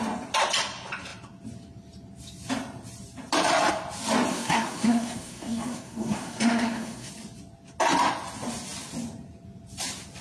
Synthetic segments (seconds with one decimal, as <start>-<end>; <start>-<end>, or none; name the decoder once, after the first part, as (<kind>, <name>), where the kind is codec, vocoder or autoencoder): 4.3-7.1 (codec, SNAC)